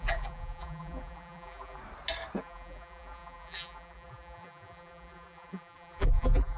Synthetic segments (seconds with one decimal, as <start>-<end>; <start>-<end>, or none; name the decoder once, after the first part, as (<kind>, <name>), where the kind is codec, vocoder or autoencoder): 0.0-1.8 (vocoder, BigVGAN v2); 2.4-6.6